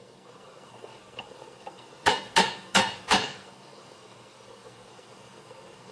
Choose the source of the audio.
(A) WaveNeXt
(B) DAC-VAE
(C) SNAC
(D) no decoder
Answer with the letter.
C